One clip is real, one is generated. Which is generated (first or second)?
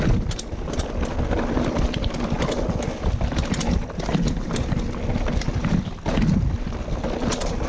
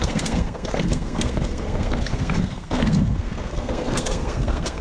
second